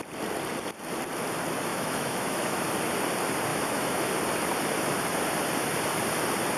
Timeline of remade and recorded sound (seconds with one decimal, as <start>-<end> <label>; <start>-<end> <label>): 0.0-1.7 recorded; 1.7-2.6 remade; 2.6-3.5 recorded; 3.5-4.1 remade; 4.1-6.6 recorded